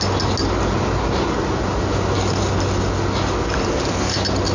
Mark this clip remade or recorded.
recorded